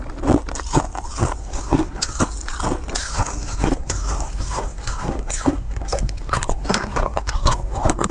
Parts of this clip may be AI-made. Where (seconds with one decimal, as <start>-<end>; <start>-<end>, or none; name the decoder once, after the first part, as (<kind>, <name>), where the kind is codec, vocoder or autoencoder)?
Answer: 1.4-2.2 (codec, SNAC); 3.0-8.1